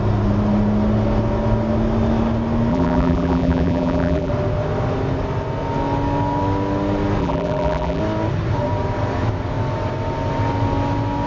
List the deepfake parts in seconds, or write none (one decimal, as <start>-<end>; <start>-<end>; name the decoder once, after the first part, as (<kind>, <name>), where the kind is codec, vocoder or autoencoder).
2.7-4.3 (vocoder, BigVGAN v2); 7.2-8.0